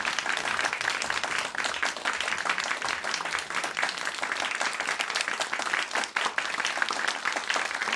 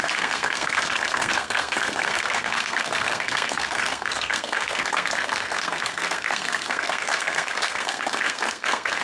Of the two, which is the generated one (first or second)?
second